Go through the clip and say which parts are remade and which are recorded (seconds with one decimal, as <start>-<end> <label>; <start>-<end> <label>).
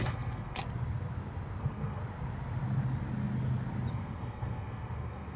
0.0-0.6 remade; 0.6-1.6 recorded; 1.6-2.0 remade; 2.0-3.9 recorded; 3.9-5.4 remade